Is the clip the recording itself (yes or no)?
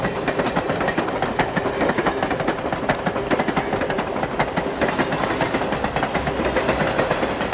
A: yes